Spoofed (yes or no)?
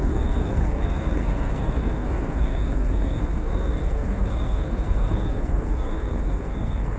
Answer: yes